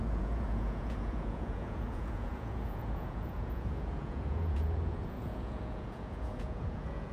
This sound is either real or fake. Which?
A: fake